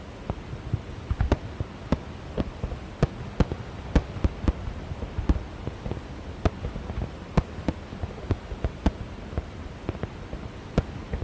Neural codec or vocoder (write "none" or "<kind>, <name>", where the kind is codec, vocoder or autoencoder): none